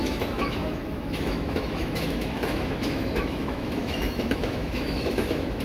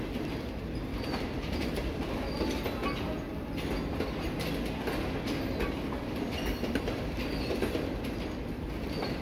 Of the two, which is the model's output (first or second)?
first